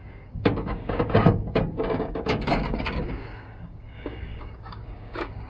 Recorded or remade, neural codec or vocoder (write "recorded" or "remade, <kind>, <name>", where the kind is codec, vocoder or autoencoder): remade, codec, DAC